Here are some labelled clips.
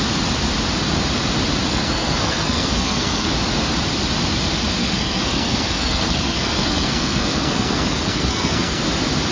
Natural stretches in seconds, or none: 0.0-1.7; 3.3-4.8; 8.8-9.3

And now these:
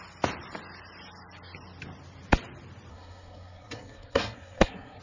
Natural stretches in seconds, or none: 0.0-2.9